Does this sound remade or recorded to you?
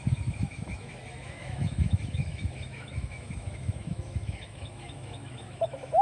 remade